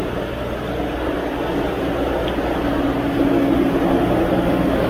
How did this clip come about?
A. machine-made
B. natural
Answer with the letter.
B